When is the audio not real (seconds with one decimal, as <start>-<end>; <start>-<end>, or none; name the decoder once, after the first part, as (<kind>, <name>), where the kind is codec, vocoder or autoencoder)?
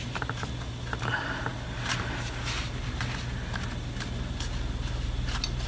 none